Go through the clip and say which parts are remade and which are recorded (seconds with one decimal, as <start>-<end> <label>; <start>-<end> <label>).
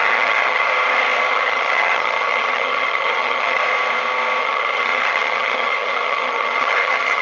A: 0.0-0.7 remade; 0.7-1.3 recorded; 1.3-3.6 remade; 3.6-4.4 recorded; 4.4-7.2 remade